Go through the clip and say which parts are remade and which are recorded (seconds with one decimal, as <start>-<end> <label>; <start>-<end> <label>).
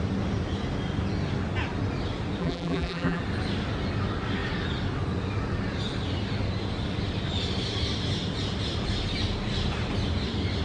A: 0.0-2.4 recorded; 2.4-3.2 remade; 3.2-10.6 recorded